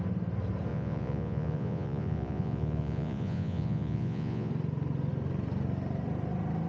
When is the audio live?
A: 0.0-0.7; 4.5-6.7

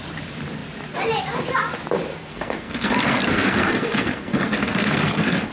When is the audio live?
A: 0.0-2.1

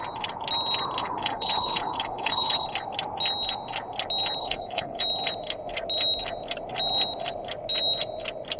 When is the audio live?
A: 0.0-1.0; 2.7-4.4; 5.0-8.6